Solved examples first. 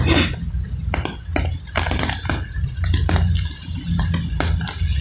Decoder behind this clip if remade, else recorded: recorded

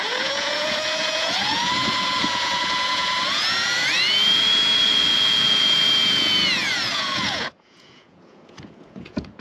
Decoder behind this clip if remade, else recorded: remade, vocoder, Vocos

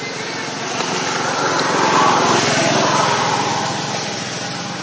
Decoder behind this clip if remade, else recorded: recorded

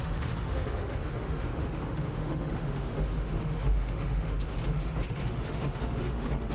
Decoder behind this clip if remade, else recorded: remade, autoencoder, DAC-VAE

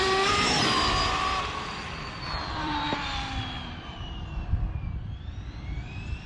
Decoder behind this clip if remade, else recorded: remade, vocoder, BigVGAN v2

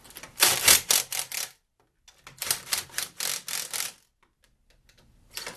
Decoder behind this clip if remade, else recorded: recorded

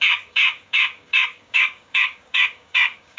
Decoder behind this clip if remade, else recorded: remade, codec, DAC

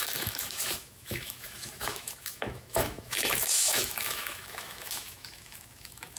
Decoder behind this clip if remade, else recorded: remade, autoencoder, DAC-VAE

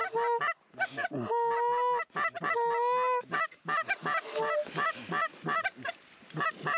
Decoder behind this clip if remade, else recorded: recorded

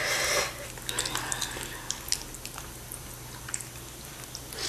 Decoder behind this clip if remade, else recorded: recorded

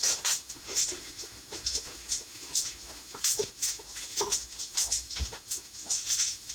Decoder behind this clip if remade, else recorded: remade, autoencoder, DAC-VAE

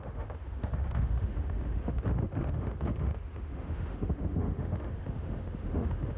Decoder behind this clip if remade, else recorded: remade, autoencoder, DAC-VAE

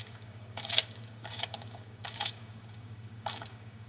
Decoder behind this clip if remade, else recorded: remade, codec, DAC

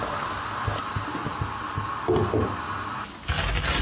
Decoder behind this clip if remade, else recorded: recorded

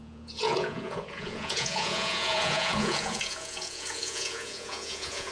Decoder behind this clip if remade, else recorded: remade, vocoder, Vocos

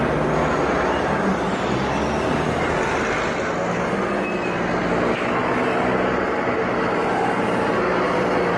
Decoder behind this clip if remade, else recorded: recorded